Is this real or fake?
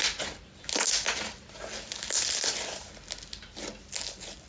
real